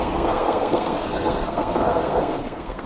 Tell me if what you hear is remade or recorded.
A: remade